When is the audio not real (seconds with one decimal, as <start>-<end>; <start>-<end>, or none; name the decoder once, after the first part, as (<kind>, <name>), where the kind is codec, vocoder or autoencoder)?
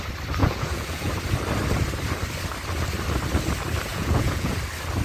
0.4-1.1 (vocoder, Vocos); 3.9-4.5